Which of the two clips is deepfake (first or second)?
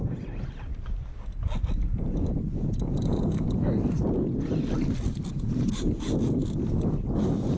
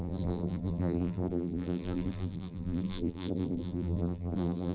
second